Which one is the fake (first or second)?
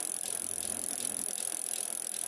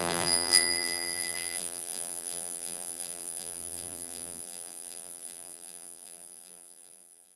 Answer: second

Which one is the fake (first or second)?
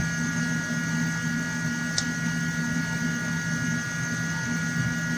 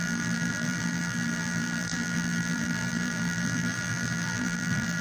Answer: second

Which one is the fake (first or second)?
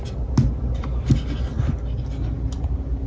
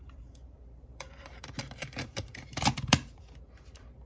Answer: second